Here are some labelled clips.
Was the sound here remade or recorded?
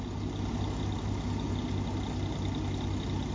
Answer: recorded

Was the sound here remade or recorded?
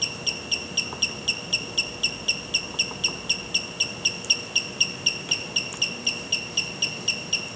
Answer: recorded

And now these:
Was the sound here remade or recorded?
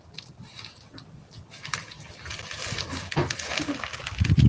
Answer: recorded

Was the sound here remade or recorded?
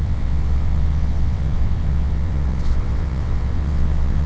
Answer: remade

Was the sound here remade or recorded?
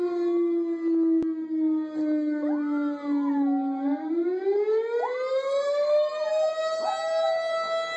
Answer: recorded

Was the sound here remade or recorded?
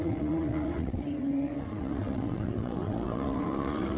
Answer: remade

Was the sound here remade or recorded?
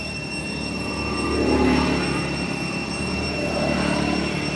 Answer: recorded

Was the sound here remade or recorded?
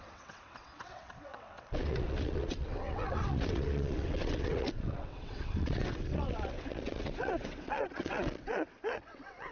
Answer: remade